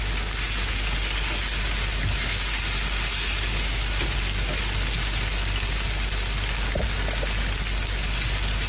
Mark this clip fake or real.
real